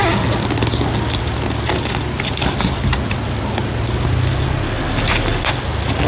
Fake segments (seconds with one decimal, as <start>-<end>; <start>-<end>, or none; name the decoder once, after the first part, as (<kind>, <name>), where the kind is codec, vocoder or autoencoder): none